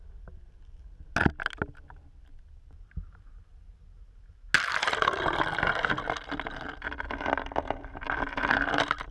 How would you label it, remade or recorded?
recorded